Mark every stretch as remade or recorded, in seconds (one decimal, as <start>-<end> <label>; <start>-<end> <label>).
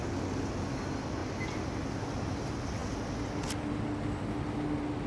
0.0-5.1 recorded